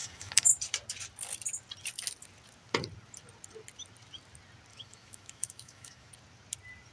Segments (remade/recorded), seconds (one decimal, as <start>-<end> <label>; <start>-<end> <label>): 0.0-0.5 remade; 0.5-4.7 recorded; 4.7-6.1 remade; 6.1-6.9 recorded